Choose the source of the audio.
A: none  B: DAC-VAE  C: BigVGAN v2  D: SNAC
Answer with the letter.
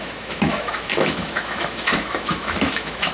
B